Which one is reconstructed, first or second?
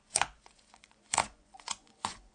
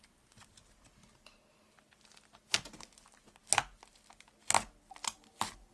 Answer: first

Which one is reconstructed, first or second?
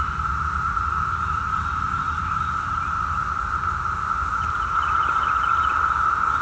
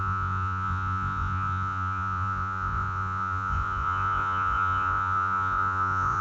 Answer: second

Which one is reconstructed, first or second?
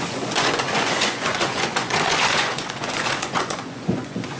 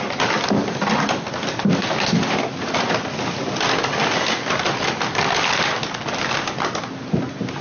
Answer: first